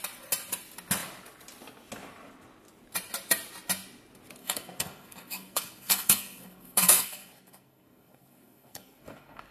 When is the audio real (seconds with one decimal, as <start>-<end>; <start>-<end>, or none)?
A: 0.0-4.4